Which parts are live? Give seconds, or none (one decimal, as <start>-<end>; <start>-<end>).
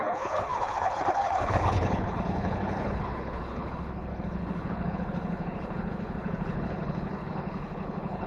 none